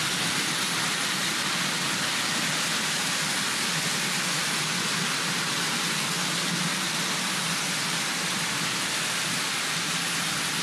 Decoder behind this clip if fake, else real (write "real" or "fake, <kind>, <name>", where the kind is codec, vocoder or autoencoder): real